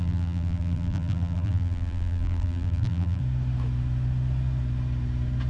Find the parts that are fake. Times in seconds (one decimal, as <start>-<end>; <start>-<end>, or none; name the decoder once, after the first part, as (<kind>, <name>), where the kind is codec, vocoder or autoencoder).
0.0-3.2 (vocoder, BigVGAN v2)